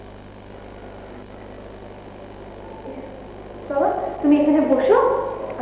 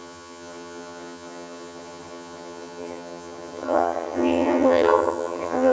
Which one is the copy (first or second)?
second